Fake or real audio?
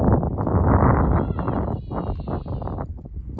real